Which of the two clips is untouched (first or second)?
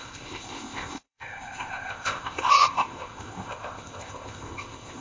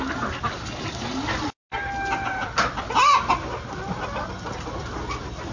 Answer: second